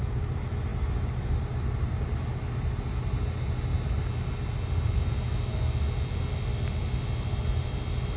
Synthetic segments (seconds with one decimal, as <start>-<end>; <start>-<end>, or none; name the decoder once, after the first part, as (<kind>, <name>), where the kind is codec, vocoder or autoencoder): none